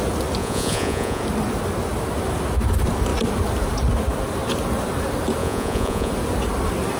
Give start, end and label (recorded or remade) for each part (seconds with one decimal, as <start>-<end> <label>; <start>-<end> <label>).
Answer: 0.0-0.4 recorded; 0.4-1.2 remade; 1.2-5.4 recorded; 5.4-6.1 remade; 6.1-7.0 recorded